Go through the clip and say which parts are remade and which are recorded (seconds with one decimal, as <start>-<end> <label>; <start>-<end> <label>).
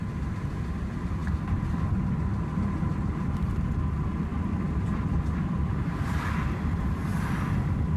0.0-8.0 recorded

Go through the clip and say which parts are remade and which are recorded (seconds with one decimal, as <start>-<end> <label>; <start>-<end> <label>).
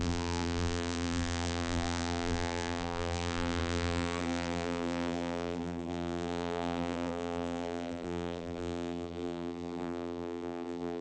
0.0-11.0 remade